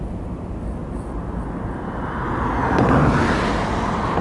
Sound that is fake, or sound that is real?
real